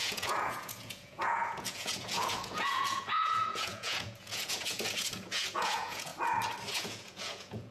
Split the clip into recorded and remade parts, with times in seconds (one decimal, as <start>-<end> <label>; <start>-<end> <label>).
0.0-6.1 remade; 6.1-6.7 recorded; 6.7-7.7 remade